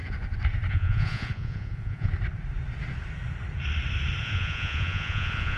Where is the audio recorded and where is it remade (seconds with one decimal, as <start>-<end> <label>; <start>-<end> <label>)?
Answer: 0.0-0.7 recorded; 0.7-2.1 remade; 2.1-4.2 recorded; 4.2-5.6 remade